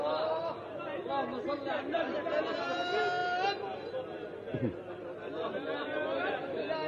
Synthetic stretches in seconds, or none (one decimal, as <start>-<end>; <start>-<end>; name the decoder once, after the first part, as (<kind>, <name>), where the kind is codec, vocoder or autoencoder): none